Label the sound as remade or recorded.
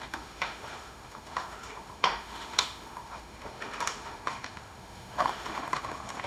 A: remade